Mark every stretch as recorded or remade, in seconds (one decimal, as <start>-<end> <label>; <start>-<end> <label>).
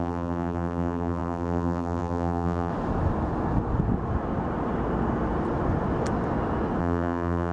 0.0-2.7 remade; 2.7-6.8 recorded; 6.8-7.5 remade